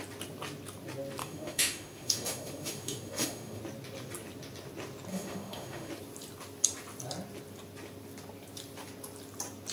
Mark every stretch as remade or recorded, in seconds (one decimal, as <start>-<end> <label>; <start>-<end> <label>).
0.0-1.2 recorded; 1.2-3.6 remade; 3.6-5.1 recorded; 5.1-5.9 remade; 5.9-9.7 recorded